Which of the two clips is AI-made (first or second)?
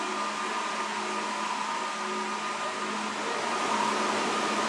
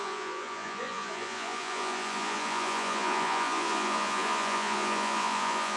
second